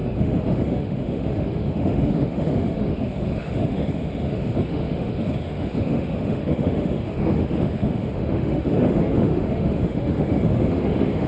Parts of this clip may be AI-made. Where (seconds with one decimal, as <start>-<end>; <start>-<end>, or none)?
0.0-11.3